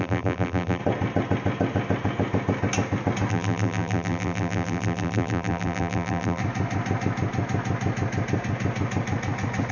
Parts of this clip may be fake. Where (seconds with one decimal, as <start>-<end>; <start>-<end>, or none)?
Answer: 0.0-0.8; 3.3-6.4